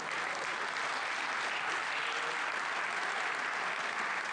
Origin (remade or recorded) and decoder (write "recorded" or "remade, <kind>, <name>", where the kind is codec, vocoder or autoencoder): recorded